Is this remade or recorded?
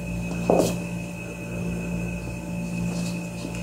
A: recorded